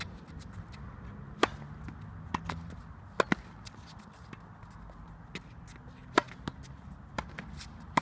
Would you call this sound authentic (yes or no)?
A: yes